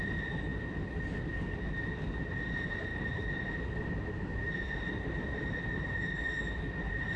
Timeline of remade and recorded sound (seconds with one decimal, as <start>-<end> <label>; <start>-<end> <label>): 0.0-2.9 recorded; 2.9-3.5 remade; 3.5-4.4 recorded; 4.4-5.1 remade; 5.1-7.2 recorded

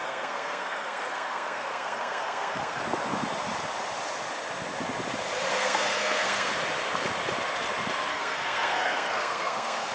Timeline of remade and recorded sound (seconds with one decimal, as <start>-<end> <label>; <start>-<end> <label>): 0.0-2.8 remade; 2.8-5.5 recorded; 5.5-6.5 remade; 6.5-8.1 recorded; 8.1-9.9 remade

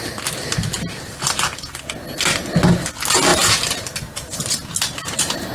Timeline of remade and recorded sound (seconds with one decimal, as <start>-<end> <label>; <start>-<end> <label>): 0.0-5.5 recorded

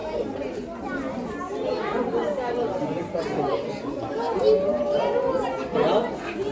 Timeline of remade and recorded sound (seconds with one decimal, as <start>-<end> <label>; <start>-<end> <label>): 0.0-6.5 recorded

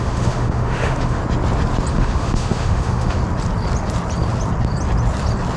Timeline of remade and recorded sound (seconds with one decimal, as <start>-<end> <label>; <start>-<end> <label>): 0.0-1.2 remade; 1.2-1.9 recorded; 1.9-3.2 remade; 3.2-5.6 recorded

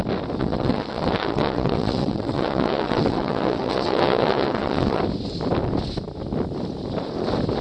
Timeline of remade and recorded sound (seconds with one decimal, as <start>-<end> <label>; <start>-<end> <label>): 0.0-0.4 recorded; 0.4-5.0 remade; 5.0-7.6 recorded

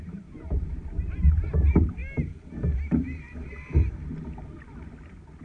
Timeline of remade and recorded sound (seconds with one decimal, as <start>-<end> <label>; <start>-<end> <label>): 0.0-2.0 remade; 2.0-2.7 recorded; 2.7-4.1 remade; 4.1-5.4 recorded